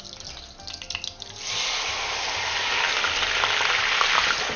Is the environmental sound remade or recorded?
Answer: recorded